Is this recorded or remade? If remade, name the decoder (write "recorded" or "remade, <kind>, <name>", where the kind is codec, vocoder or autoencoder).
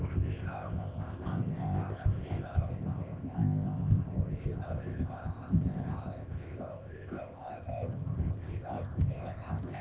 remade, codec, ZipCodec